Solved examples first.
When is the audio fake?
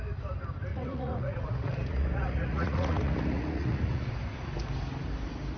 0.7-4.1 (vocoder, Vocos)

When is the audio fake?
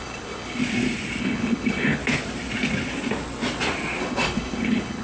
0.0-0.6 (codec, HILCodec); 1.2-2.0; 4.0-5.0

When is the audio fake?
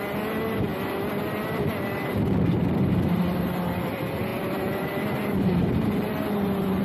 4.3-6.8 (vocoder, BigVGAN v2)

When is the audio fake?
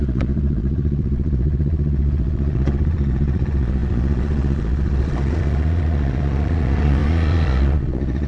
0.0-8.3 (vocoder, Vocos)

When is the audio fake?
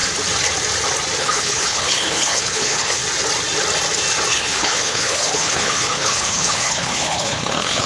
1.2-3.0 (codec, HILCodec); 4.3-7.9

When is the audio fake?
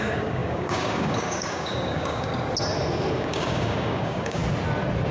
0.0-2.3 (codec, DAC); 3.1-4.4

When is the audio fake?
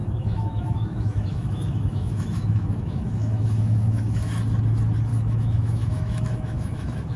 0.0-4.3 (autoencoder, DAC-VAE); 5.1-7.2